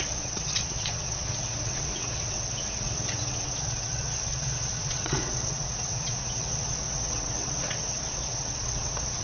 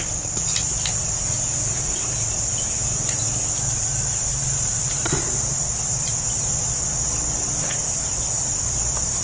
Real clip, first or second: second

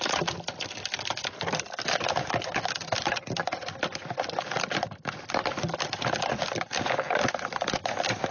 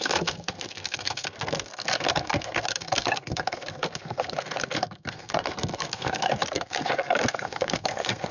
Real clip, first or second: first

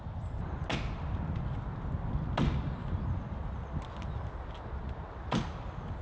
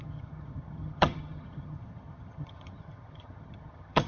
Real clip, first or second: first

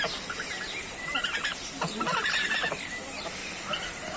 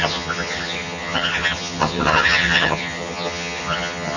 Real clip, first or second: first